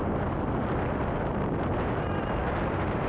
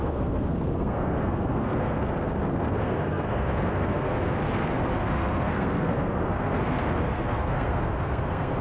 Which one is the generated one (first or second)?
second